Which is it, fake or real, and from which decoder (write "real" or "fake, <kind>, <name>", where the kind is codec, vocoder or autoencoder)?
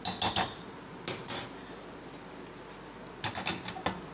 real